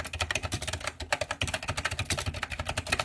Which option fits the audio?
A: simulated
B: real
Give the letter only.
B